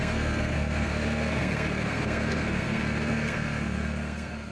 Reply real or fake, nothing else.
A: fake